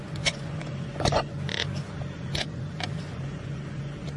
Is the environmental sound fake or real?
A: fake